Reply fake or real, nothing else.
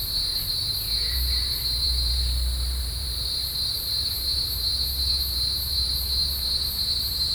fake